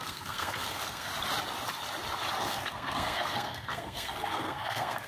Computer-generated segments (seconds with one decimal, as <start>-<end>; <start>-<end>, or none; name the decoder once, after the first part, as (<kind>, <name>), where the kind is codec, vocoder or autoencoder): 0.0-1.1 (codec, SNAC); 2.4-5.1